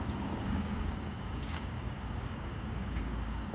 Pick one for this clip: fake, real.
fake